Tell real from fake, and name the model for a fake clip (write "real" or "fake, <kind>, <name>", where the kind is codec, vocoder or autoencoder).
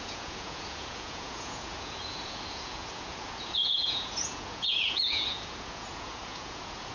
fake, vocoder, Vocos